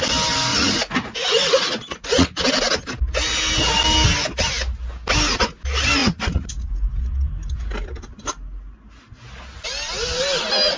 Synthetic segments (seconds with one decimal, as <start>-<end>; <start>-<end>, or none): 0.5-2.4; 6.0-6.7